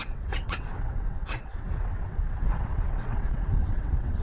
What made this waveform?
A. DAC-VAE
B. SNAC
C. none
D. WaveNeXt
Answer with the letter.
D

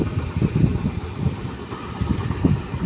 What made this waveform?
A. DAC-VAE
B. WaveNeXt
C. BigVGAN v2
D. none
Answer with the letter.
C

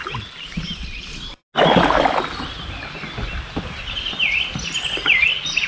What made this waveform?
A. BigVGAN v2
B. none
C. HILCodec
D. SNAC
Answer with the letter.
B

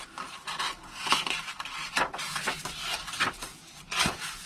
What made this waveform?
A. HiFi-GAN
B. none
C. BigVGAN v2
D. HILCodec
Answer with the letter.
B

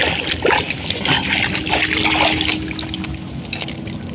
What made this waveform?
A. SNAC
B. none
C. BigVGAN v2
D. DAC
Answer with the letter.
B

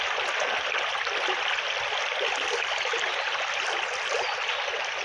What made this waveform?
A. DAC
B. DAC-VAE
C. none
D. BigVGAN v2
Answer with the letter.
C